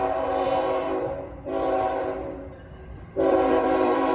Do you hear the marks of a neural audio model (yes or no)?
yes